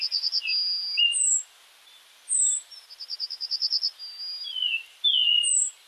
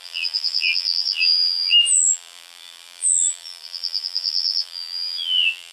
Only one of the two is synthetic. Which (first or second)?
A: second